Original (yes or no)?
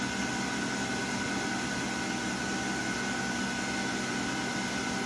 yes